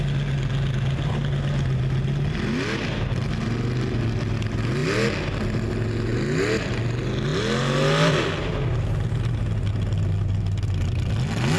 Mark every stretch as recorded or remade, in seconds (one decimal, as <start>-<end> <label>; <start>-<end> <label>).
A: 0.0-11.6 recorded